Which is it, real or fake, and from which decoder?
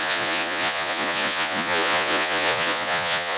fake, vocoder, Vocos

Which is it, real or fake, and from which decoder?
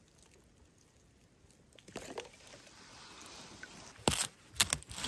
real